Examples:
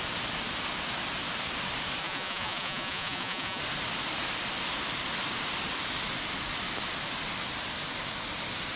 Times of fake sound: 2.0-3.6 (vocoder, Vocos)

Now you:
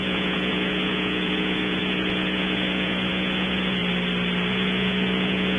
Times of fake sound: 0.0-3.8 (vocoder, Vocos); 4.5-5.6

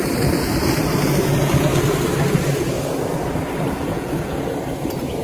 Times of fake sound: 3.9-4.4 (vocoder, Vocos)

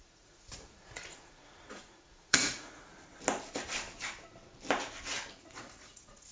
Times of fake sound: 0.0-2.9 (vocoder, Vocos); 5.3-6.3

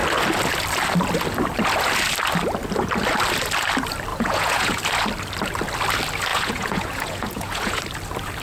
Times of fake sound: 4.1-4.8 (vocoder, Vocos); 6.3-7.8